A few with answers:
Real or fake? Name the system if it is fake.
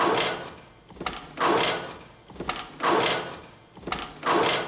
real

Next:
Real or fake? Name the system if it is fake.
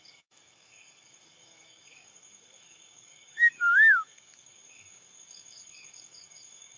fake, codec, DAC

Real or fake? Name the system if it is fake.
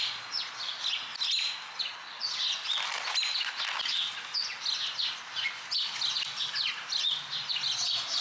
real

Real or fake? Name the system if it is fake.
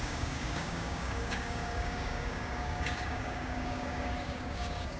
fake, codec, DAC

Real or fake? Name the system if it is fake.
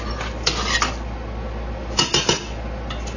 real